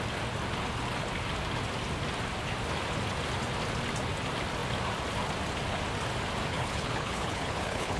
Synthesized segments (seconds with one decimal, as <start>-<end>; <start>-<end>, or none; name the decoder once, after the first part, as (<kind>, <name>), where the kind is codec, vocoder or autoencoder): 6.5-8.0 (codec, HILCodec)